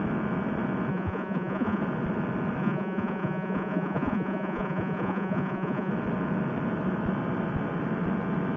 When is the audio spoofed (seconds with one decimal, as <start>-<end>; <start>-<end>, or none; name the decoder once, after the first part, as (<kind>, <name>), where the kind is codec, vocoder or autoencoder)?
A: 0.9-1.8 (vocoder, Vocos); 2.6-5.9